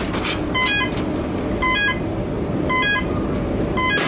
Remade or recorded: recorded